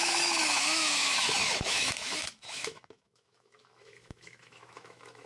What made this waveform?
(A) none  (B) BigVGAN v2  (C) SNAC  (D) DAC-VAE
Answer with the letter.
D